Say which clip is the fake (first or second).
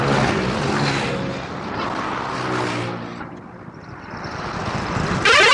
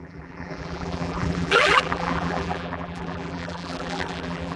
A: second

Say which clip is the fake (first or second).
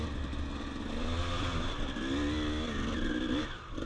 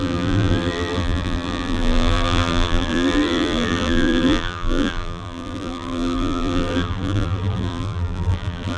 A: second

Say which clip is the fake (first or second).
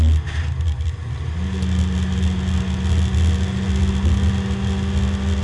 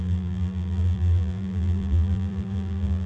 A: second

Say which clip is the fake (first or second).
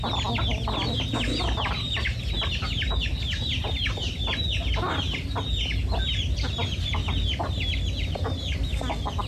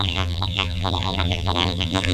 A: second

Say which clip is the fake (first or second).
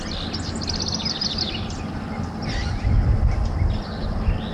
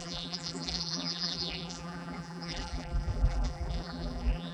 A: second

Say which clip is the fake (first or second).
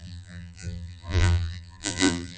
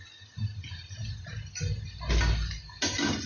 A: first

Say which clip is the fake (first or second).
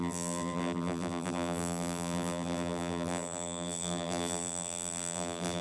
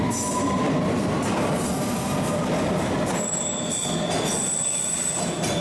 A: first